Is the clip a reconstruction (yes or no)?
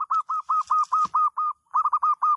no